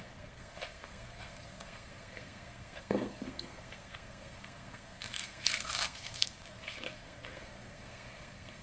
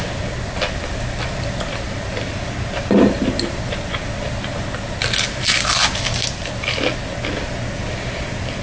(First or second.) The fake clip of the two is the first